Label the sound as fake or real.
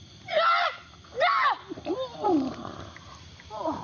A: real